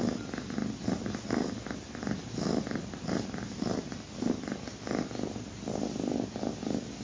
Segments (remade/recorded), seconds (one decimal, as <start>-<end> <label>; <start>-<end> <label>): 0.0-7.0 recorded